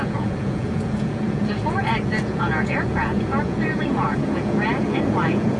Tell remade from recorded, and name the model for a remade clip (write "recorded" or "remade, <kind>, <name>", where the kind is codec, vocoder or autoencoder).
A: remade, vocoder, Vocos